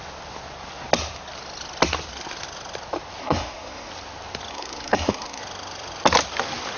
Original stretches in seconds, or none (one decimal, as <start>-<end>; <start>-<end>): 0.0-3.2; 3.9-4.5; 5.4-6.8